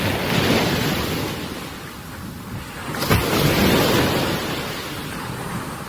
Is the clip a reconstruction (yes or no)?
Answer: no